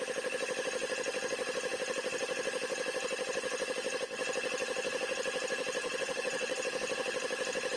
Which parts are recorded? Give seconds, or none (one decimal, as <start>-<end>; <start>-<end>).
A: 0.0-5.8; 6.6-7.8